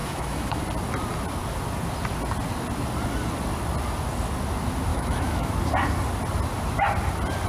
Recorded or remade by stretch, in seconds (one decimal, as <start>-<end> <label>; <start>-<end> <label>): 0.0-0.6 remade; 0.6-4.9 recorded; 4.9-5.5 remade; 5.5-7.5 recorded